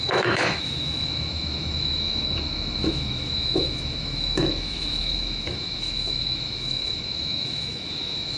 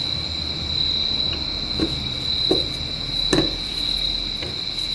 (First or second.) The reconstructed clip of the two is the first